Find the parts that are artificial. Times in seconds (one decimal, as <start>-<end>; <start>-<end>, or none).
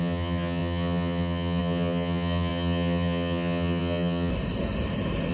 0.0-4.3